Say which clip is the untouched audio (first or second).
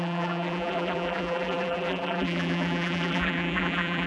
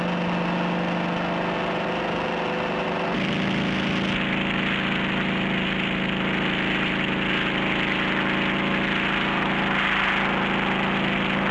second